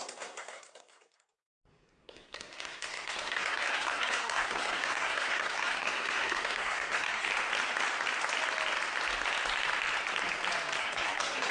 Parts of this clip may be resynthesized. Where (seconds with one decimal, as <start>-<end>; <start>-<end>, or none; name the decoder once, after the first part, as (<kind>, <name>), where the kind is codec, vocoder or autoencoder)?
0.0-7.3 (codec, SNAC); 10.8-11.5

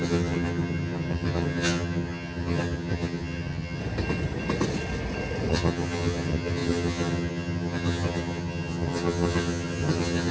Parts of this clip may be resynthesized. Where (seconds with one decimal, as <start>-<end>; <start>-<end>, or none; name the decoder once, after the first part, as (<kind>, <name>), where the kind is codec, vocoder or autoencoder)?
0.0-3.8 (vocoder, HiFi-GAN); 5.5-10.3

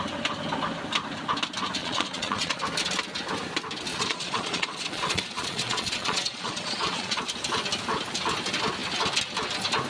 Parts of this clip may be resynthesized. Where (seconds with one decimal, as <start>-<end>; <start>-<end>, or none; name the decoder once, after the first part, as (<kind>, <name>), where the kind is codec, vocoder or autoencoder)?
1.8-2.6 (vocoder, Vocos); 3.9-7.2

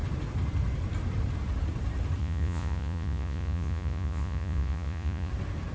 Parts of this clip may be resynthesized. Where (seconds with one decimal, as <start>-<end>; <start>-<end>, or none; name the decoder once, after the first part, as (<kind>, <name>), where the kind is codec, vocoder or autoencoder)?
2.2-5.3 (vocoder, Vocos)

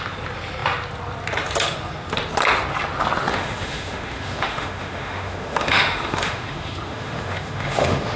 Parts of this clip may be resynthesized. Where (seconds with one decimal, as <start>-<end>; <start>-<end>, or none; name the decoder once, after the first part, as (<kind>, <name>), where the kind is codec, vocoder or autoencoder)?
3.3-8.2 (autoencoder, DAC-VAE)

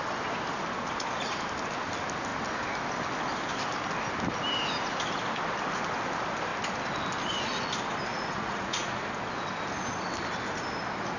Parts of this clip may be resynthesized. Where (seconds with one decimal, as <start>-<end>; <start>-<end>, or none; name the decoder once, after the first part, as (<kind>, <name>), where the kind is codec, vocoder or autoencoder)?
8.1-9.0 (vocoder, Vocos)

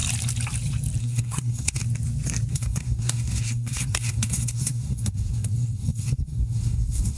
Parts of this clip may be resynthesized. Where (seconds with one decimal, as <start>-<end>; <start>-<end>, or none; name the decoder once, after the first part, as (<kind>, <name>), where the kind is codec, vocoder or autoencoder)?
1.0-1.8 (codec, SNAC); 2.5-7.2